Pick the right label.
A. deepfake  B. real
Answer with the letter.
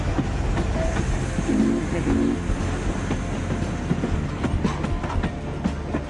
B